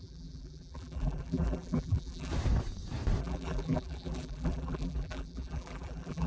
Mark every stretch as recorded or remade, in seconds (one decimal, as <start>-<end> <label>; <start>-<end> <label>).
0.0-2.3 remade; 2.3-3.2 recorded; 3.2-6.3 remade